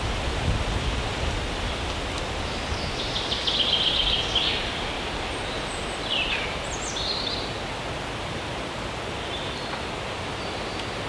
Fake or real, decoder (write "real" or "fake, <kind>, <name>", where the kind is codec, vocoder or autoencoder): real